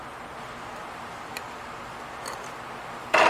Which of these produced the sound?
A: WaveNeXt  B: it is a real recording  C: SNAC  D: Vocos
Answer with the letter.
B